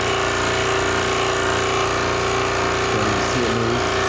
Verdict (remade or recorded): recorded